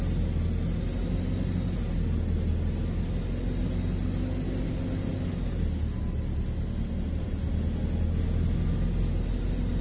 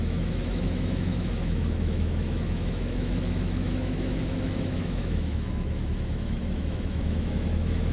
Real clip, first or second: first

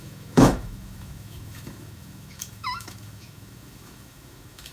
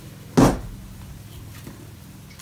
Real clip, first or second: second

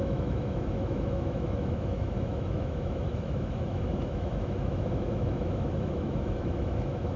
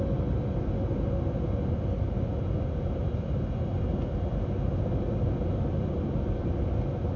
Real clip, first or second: second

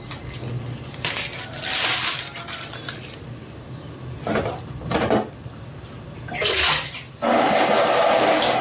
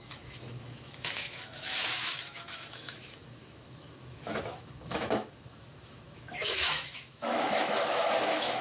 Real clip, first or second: first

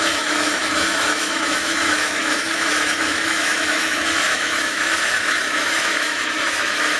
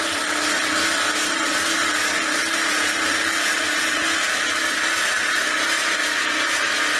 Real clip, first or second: second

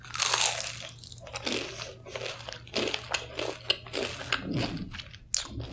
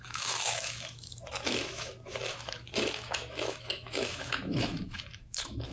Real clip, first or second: first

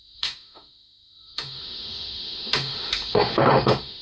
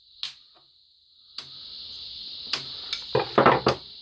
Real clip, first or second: second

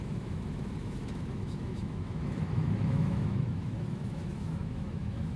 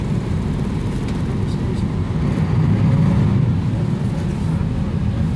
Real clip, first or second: second